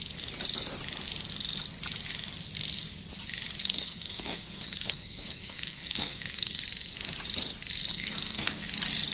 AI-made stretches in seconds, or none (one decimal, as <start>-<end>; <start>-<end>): 3.6-6.6; 7.9-8.6